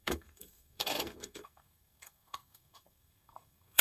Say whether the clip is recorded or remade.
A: remade